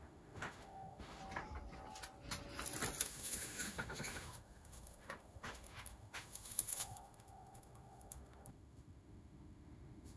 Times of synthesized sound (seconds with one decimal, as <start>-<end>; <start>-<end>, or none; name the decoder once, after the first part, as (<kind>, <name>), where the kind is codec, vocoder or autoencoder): 0.0-1.2 (autoencoder, DAC-VAE); 3.0-10.2